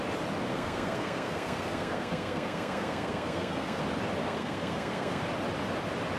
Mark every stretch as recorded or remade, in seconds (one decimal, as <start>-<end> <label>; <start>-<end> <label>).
0.0-0.5 recorded; 0.5-3.8 remade; 3.8-4.2 recorded; 4.2-5.2 remade; 5.2-6.2 recorded